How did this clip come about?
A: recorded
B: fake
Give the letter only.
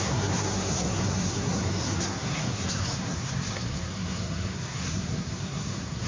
B